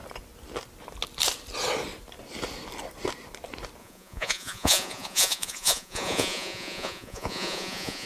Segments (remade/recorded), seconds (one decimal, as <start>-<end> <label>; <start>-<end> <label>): 0.0-3.8 recorded; 3.8-8.1 remade